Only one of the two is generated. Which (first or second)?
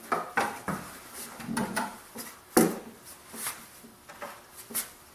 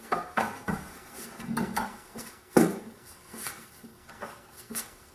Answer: second